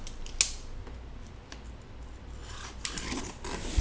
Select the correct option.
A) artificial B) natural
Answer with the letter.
B